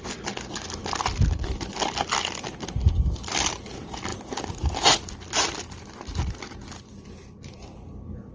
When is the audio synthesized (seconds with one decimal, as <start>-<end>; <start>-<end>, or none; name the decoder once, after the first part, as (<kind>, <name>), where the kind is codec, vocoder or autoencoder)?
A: none